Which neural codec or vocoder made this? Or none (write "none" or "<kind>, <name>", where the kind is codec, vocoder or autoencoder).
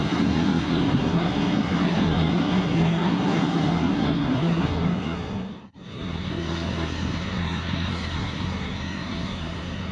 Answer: codec, SNAC